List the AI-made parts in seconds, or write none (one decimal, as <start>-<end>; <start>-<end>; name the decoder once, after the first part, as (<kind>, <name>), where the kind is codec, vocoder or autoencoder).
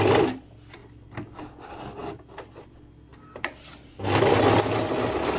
none